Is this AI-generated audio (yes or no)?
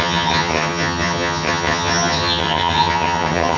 yes